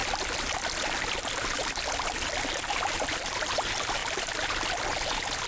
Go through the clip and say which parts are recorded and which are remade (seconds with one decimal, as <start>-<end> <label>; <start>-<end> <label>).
0.0-2.9 recorded; 2.9-4.0 remade; 4.0-5.5 recorded